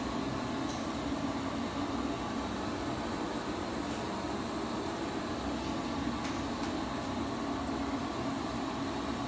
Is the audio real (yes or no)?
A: yes